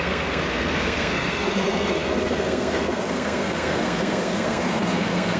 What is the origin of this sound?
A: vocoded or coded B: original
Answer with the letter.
A